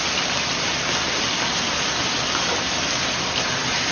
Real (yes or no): yes